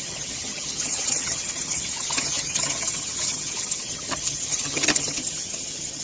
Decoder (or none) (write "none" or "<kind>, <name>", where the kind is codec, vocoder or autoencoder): vocoder, HiFi-GAN